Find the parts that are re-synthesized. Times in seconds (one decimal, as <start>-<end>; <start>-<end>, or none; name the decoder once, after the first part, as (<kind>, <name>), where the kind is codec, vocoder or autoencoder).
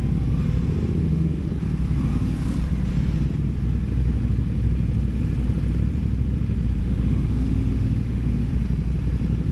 1.0-1.5 (autoencoder, DAC-VAE); 6.8-8.5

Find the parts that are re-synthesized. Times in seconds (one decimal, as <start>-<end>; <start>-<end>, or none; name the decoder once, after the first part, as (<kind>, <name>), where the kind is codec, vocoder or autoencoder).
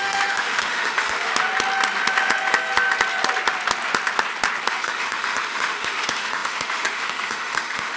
0.0-1.3 (autoencoder, DAC-VAE); 4.7-8.0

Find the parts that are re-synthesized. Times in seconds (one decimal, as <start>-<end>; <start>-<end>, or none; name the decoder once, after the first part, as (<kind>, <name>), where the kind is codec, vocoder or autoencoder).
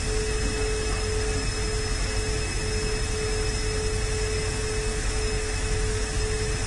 4.9-6.2 (autoencoder, DAC-VAE)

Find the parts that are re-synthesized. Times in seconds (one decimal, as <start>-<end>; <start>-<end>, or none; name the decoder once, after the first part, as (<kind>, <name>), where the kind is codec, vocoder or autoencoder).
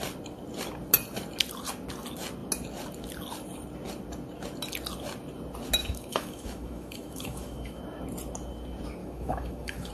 5.8-7.8 (autoencoder, DAC-VAE); 9.0-9.9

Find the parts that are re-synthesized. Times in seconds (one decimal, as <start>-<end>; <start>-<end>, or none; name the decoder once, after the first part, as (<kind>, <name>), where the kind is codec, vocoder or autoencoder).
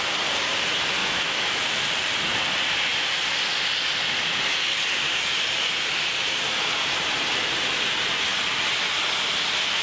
1.0-1.6 (autoencoder, DAC-VAE)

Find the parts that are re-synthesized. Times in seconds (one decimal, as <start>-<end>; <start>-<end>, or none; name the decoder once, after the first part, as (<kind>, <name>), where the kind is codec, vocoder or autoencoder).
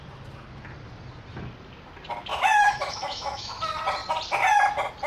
2.3-3.6 (autoencoder, DAC-VAE)